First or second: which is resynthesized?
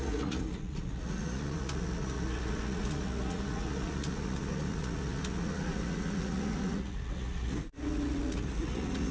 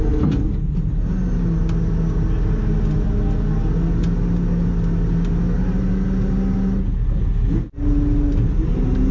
first